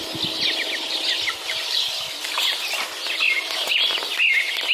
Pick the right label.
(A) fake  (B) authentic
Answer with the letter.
B